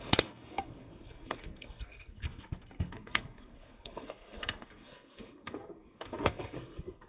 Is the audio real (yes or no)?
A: no